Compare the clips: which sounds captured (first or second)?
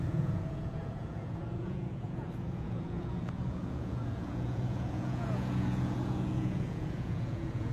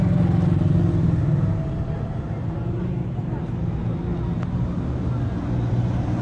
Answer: second